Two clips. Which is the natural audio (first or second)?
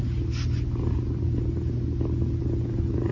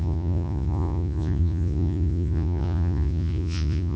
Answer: first